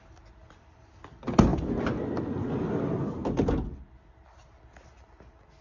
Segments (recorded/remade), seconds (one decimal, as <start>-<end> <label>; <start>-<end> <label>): 0.0-5.6 recorded